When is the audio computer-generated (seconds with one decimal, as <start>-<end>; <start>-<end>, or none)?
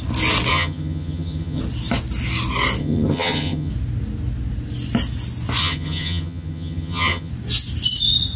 0.5-1.6; 2.8-3.7; 5.6-7.3